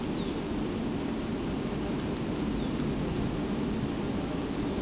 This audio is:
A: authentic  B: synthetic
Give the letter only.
A